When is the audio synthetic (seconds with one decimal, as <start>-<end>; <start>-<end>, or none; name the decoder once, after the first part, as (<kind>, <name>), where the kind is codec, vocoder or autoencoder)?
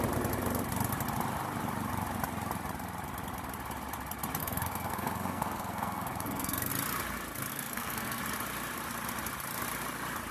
4.4-6.7 (codec, SNAC); 7.5-8.2